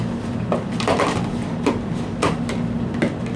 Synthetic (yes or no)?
no